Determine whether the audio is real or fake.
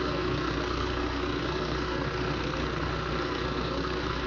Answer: fake